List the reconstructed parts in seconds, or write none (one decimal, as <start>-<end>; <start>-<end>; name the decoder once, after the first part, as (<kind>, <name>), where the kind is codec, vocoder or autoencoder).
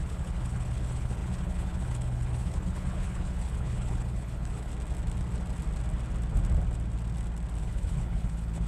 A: 0.0-4.7 (codec, HILCodec); 7.6-8.7